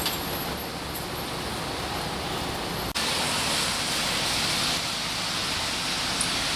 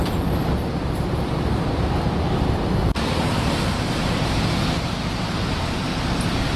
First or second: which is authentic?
first